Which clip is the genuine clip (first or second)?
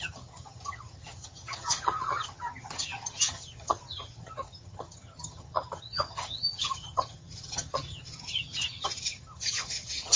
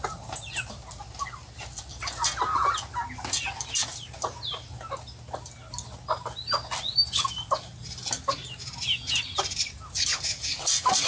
second